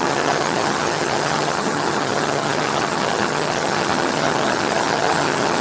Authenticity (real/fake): fake